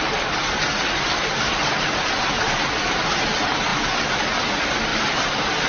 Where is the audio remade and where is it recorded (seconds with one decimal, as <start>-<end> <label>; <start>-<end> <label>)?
0.0-4.9 recorded; 4.9-5.7 remade